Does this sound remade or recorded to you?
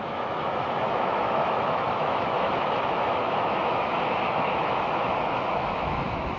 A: remade